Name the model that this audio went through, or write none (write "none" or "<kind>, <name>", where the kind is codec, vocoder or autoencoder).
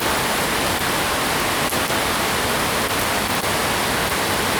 none